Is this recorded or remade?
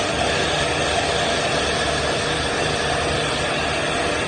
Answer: recorded